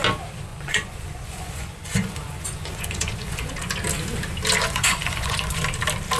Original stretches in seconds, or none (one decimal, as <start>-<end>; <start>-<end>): 0.0-0.5; 3.5-4.6; 5.6-6.2